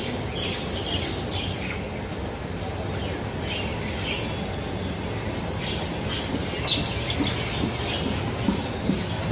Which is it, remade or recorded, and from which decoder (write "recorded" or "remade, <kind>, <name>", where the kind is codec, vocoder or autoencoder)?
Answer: recorded